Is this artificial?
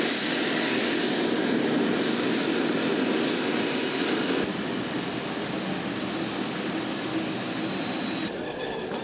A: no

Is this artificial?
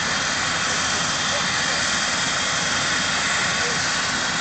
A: no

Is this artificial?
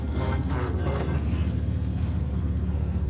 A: yes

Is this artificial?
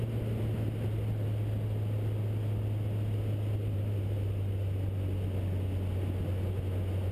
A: no